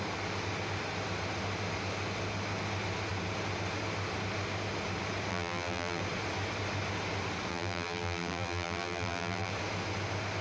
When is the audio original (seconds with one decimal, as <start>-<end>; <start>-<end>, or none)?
0.0-5.3; 6.0-7.5; 9.5-10.4